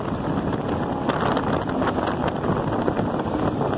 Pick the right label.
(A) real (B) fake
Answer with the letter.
A